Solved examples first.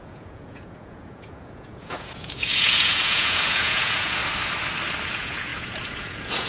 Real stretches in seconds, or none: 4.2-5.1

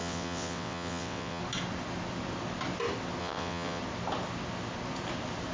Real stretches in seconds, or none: 1.4-3.2; 3.8-5.5

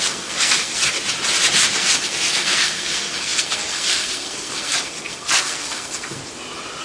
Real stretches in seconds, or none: 0.8-1.7; 6.2-6.8

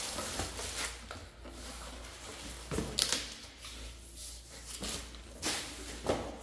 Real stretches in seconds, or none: 0.0-6.4

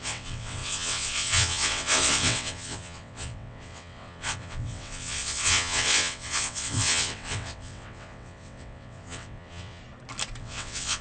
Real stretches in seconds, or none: 9.8-10.4

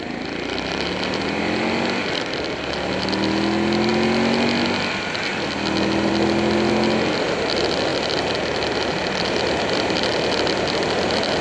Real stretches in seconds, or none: 0.0-11.4

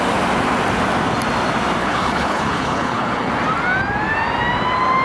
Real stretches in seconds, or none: 0.0-1.8; 3.3-5.0

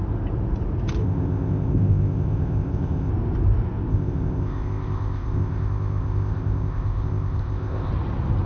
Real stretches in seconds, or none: 0.0-1.0; 3.1-3.9; 7.9-8.5